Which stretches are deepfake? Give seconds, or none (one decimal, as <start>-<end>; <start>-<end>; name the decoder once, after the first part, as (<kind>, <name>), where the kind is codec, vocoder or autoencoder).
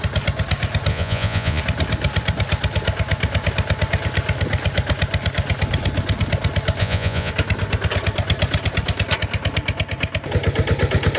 0.9-1.6 (vocoder, Vocos); 6.8-7.3